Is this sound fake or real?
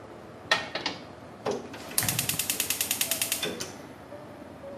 fake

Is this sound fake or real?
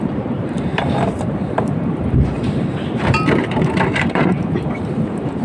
fake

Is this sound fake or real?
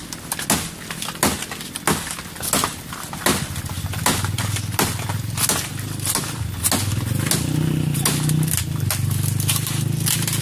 real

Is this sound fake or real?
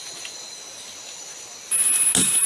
real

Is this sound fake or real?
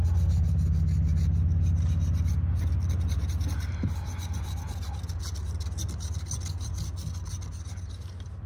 real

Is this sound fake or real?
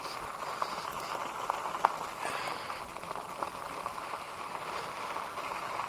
real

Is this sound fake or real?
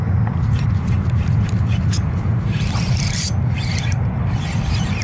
fake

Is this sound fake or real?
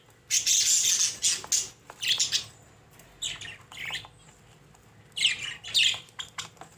real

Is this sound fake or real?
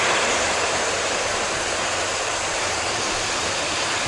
fake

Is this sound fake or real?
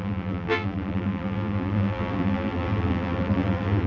fake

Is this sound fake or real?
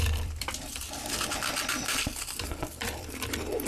fake